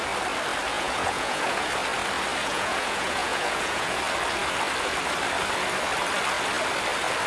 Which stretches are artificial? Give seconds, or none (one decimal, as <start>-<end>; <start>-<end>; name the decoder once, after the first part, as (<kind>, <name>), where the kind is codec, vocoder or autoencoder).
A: 0.7-1.7 (vocoder, Vocos); 2.4-4.0